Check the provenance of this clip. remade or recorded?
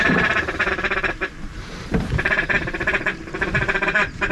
remade